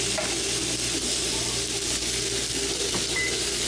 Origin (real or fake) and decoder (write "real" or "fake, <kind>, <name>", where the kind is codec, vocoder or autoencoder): real